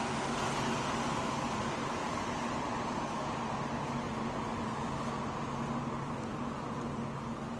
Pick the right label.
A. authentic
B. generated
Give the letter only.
A